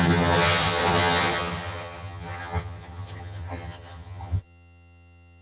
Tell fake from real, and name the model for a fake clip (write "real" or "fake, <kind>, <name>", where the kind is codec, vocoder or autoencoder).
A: fake, vocoder, HiFi-GAN